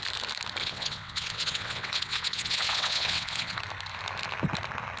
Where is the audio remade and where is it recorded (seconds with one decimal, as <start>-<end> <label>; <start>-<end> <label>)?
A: 0.0-0.6 recorded; 0.6-3.6 remade; 3.6-5.0 recorded